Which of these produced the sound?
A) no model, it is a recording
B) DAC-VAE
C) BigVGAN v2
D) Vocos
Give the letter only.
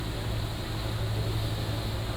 A